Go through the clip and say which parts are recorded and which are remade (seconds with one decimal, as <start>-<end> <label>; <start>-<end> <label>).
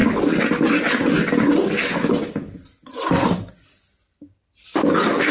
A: 0.0-5.3 recorded